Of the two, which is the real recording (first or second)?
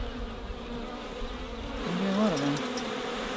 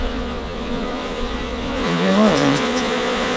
first